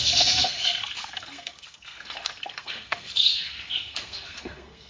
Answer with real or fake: fake